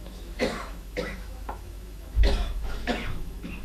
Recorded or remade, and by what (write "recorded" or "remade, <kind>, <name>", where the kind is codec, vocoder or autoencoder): remade, autoencoder, DAC-VAE